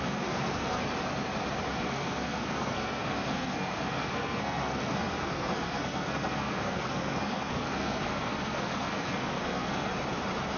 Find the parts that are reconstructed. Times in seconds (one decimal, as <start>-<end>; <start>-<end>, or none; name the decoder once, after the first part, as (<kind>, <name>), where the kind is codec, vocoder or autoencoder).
0.0-0.8 (codec, SNAC); 1.7-9.9